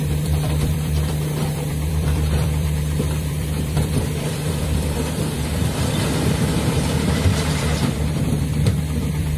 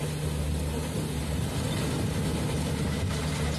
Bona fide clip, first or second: second